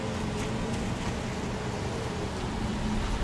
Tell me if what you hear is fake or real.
real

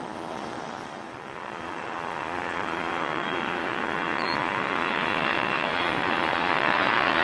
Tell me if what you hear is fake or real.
fake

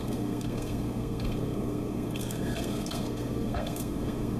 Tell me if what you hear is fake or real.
fake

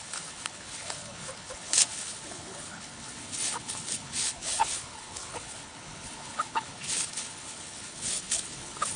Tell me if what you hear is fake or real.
fake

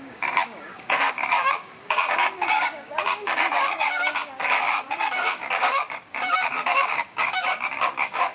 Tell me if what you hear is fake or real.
fake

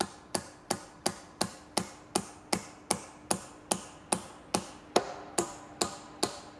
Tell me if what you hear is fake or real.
real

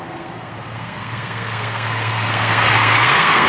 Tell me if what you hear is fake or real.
fake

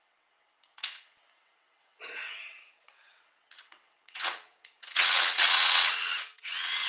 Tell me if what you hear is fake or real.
fake